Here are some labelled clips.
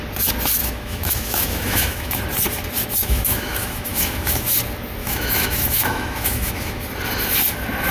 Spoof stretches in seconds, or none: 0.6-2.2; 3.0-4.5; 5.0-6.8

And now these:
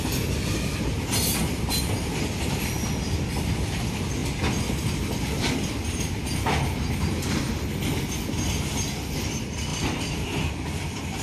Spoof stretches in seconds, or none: none

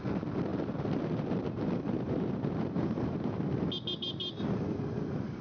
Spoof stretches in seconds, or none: 0.5-3.7

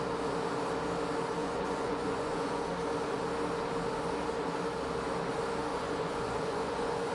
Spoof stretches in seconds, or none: 1.4-2.6; 5.7-7.1

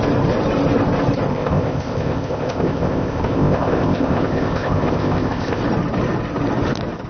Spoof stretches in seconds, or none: 1.3-5.6